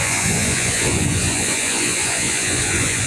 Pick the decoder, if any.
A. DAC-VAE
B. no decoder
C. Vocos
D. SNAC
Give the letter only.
C